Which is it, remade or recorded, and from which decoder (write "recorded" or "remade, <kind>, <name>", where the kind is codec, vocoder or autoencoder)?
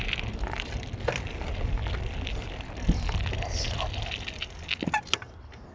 recorded